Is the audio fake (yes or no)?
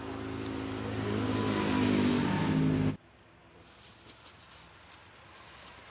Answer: no